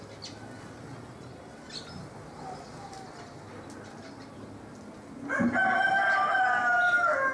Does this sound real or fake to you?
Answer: real